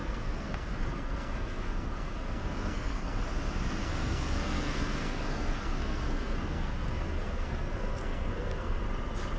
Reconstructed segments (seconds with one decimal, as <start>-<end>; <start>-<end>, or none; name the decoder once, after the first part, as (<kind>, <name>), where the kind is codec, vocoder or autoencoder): 0.0-3.2 (codec, SNAC); 3.8-8.8